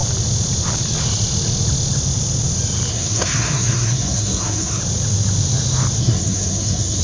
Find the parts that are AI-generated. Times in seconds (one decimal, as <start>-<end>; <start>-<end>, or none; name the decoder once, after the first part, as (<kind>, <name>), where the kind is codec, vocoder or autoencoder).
2.9-4.8 (codec, SNAC); 6.0-7.0